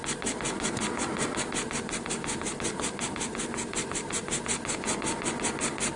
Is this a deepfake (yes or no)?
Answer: no